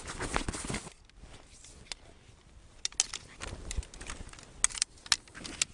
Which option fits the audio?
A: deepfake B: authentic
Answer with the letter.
B